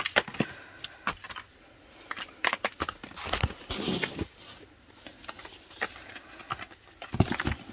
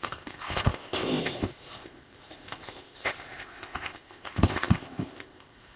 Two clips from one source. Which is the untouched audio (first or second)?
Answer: first